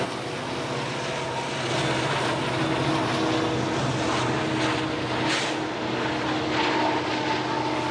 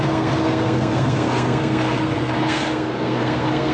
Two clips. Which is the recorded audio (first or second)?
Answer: first